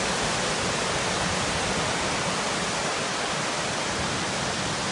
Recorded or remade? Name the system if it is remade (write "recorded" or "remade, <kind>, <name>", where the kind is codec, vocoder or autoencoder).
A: recorded